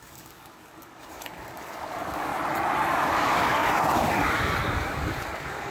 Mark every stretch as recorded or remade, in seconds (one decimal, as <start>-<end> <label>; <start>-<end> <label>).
0.0-2.3 remade; 2.3-2.9 recorded; 2.9-5.7 remade